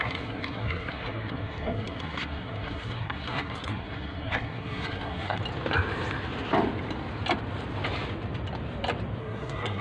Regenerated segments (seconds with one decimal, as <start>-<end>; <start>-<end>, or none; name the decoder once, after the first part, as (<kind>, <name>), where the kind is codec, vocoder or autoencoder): 0.0-5.4 (codec, SNAC); 9.2-9.8